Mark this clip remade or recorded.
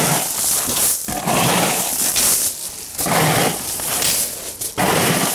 recorded